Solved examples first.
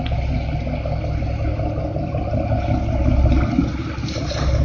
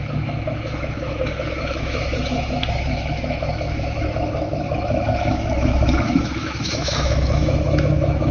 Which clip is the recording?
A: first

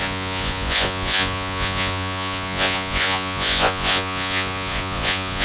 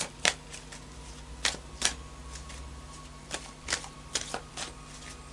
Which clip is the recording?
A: second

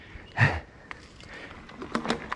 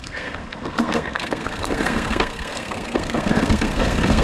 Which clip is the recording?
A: first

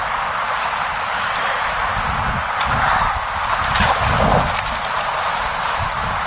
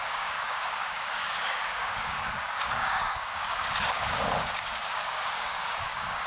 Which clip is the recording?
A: first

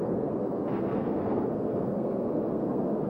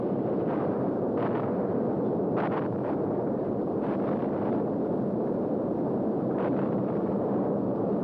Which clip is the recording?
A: second